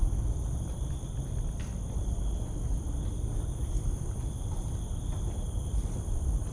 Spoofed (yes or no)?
no